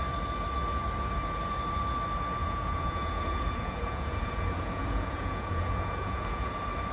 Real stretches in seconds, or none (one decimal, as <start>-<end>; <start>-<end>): 0.0-2.4; 6.5-6.9